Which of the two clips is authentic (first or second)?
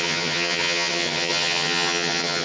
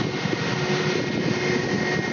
second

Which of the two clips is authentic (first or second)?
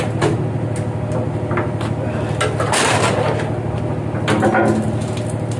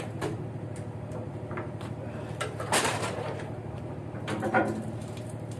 first